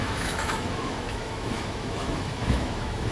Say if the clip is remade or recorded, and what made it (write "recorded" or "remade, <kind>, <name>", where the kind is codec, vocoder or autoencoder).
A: remade, autoencoder, DAC-VAE